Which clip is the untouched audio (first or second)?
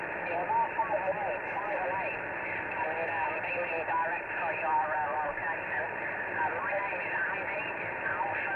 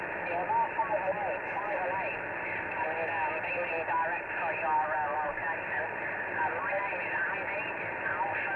second